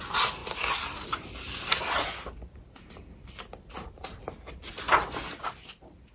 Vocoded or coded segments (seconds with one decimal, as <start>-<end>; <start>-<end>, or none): none

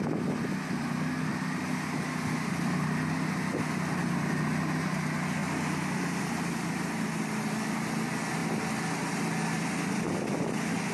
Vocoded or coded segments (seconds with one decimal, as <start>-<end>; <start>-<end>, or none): none

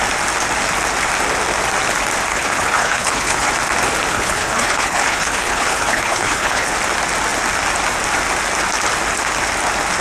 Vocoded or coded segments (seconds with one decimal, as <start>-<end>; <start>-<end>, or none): 2.3-3.5; 4.1-6.7

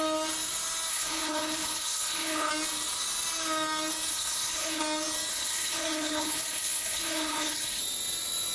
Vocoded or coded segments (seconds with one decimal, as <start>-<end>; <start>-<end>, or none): 0.9-2.5; 4.1-4.8; 5.3-7.8

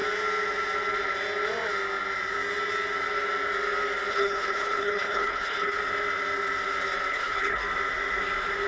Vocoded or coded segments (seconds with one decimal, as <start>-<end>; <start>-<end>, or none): 4.1-5.8; 7.1-7.6